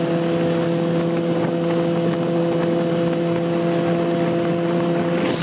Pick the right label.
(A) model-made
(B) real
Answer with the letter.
B